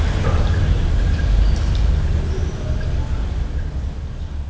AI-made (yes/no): no